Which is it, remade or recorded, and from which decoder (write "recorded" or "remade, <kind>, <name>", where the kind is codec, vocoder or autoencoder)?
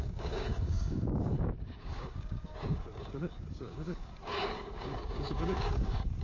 remade, codec, DAC